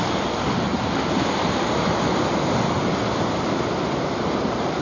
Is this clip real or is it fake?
real